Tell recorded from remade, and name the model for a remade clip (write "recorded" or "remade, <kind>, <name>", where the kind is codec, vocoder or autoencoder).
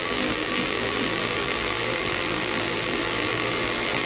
remade, vocoder, BigVGAN v2